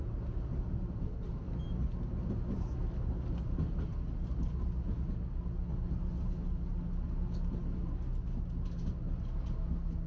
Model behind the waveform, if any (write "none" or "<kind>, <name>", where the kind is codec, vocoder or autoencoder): none